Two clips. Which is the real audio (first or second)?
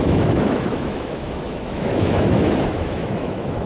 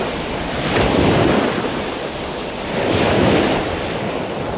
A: second